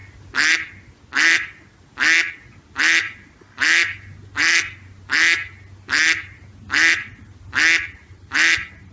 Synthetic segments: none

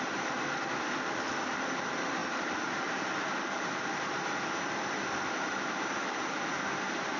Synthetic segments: none

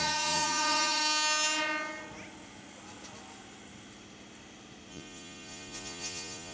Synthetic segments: 0.0-1.0 (vocoder, Vocos); 4.9-6.5

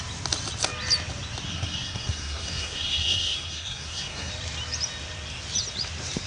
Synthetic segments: 1.5-4.3 (codec, SNAC)

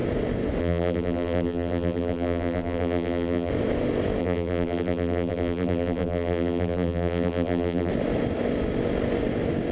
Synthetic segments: 0.6-3.5 (vocoder, BigVGAN v2); 4.2-7.9

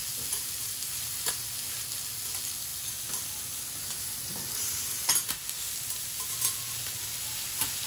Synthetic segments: none

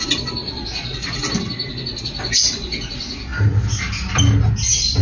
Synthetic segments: none